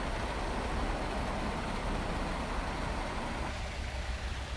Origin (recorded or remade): recorded